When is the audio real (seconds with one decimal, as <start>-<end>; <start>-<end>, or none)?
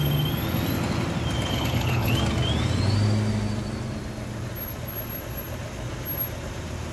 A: 0.0-1.5; 2.1-6.9